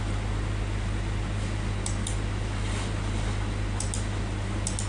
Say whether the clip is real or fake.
real